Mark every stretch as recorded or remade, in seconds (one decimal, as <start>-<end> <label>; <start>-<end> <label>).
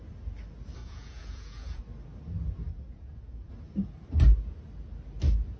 0.0-0.8 recorded; 0.8-1.8 remade; 1.8-2.7 recorded; 2.7-3.5 remade; 3.5-5.6 recorded